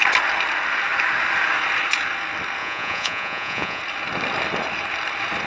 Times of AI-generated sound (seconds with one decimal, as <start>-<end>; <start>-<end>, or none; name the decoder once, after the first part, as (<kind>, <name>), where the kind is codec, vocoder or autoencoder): 2.6-3.8 (vocoder, Vocos)